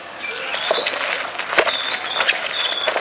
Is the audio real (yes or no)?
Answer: yes